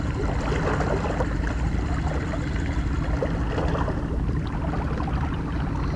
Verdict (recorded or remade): recorded